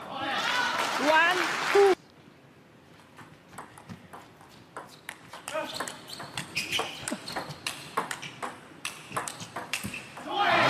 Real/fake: real